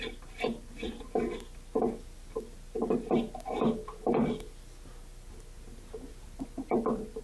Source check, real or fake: real